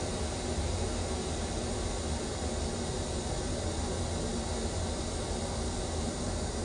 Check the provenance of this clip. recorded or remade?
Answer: recorded